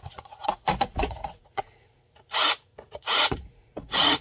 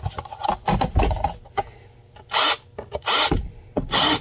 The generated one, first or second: first